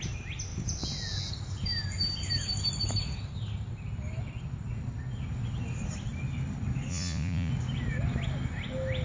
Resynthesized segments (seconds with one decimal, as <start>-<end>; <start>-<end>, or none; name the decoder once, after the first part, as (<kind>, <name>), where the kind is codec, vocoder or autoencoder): 6.9-7.5 (vocoder, Vocos)